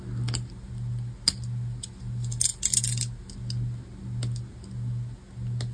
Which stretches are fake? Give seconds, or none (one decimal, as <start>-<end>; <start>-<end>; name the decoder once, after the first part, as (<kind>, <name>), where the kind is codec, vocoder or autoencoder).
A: none